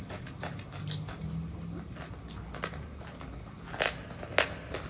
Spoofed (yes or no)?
no